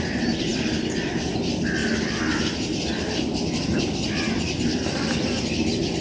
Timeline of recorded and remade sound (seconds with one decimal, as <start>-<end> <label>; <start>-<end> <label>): 0.0-6.0 recorded